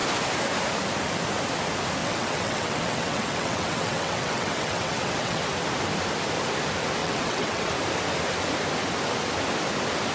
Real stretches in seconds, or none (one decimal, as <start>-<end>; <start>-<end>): 0.0-2.0; 5.4-7.0; 7.7-10.1